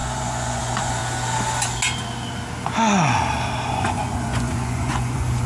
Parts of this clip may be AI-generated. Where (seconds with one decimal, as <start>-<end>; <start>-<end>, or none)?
0.0-1.0; 3.7-5.5